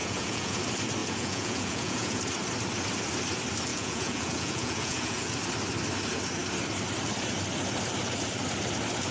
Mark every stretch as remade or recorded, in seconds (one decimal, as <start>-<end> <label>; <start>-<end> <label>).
0.0-0.6 remade; 0.6-1.0 recorded; 1.0-2.2 remade; 2.2-3.7 recorded; 3.7-5.3 remade; 5.3-9.1 recorded